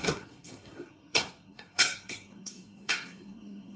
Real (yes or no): no